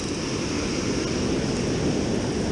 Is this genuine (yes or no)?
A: yes